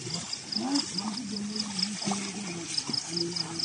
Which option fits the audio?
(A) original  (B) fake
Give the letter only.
A